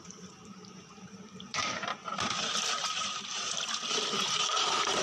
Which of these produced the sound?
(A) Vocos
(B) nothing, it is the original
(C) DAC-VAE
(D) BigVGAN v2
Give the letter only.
D